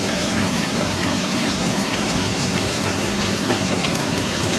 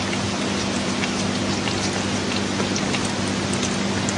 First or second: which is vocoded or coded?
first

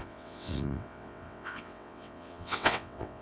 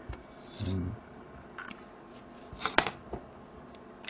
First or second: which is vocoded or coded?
first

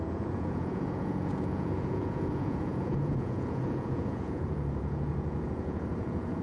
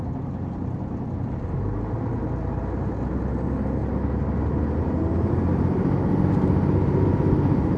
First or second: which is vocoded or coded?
first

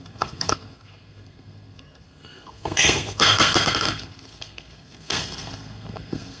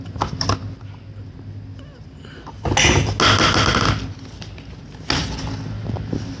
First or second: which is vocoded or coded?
first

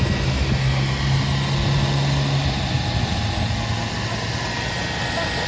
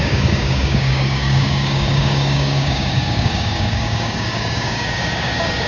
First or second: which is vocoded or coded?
second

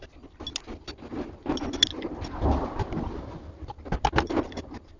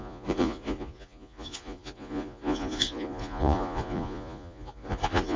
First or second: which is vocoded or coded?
second